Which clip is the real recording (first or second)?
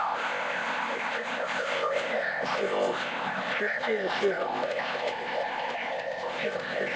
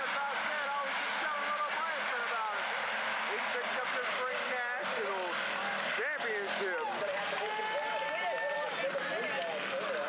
second